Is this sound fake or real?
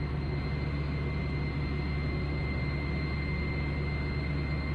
real